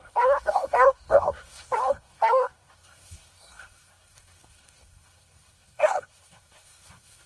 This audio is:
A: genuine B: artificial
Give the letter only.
B